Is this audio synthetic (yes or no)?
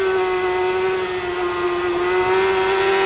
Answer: no